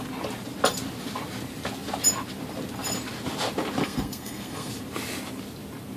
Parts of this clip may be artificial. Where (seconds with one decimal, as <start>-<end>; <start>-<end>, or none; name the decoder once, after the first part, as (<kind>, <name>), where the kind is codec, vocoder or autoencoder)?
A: 3.8-4.7 (codec, SNAC)